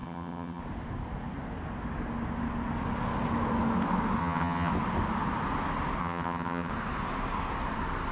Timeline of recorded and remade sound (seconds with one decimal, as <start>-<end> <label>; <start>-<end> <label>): 0.0-0.6 remade; 0.6-4.2 recorded; 4.2-4.7 remade; 4.7-6.0 recorded; 6.0-6.7 remade; 6.7-8.1 recorded